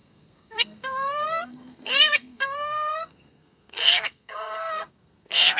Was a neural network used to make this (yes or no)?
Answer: yes